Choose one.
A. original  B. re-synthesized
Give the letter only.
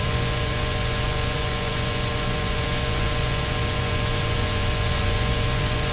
B